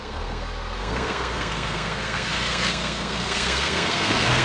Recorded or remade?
remade